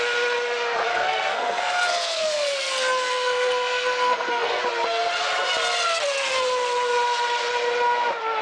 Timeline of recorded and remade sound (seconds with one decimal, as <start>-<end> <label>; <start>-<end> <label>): 0.0-0.9 recorded; 0.9-4.6 remade; 4.6-8.4 recorded